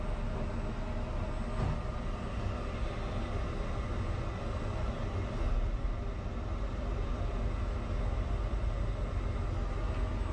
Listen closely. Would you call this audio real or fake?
real